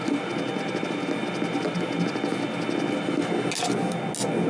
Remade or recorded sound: recorded